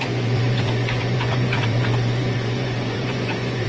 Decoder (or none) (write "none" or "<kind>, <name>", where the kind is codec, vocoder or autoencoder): vocoder, Vocos